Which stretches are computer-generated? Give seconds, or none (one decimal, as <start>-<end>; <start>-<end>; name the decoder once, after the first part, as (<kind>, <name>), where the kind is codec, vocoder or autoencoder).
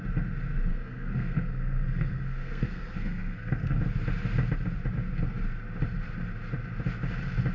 0.7-3.8 (codec, SNAC)